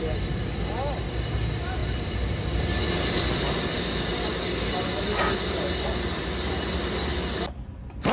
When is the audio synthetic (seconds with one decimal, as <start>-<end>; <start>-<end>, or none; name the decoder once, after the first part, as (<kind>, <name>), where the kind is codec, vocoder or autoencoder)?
none